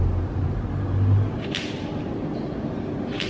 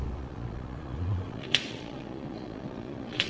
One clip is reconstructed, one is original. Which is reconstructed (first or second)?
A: second